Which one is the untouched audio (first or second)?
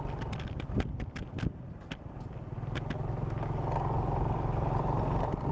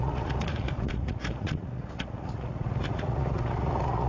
first